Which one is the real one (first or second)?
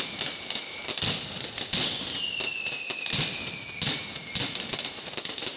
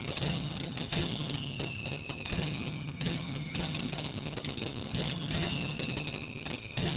first